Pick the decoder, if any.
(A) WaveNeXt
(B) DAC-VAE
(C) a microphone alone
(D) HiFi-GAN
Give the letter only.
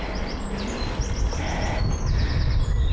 C